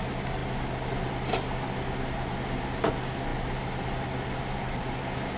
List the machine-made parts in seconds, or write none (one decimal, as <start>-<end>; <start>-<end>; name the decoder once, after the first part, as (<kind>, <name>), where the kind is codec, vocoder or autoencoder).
none